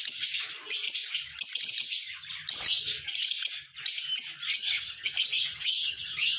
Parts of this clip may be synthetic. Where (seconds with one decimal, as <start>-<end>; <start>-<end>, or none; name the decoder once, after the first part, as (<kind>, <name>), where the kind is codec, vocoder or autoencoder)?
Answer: 4.5-5.1 (vocoder, HiFi-GAN); 5.5-6.4